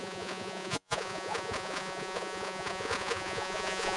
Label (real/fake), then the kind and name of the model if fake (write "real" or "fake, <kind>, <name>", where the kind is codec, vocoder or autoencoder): fake, vocoder, Vocos